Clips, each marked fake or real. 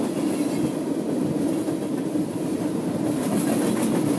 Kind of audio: real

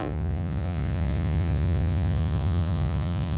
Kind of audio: fake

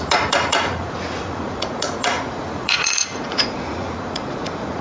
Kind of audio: fake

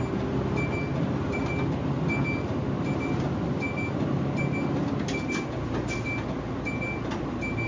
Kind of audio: real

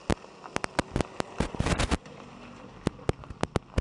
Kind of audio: real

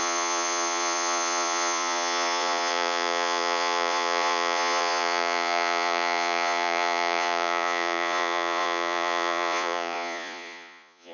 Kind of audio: fake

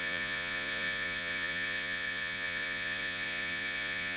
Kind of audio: fake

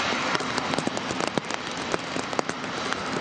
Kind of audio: real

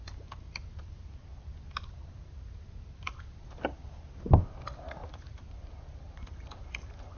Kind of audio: real